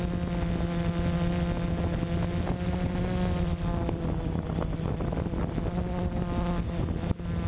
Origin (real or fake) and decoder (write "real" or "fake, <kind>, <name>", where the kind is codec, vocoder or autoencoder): real